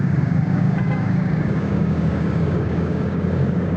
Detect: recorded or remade remade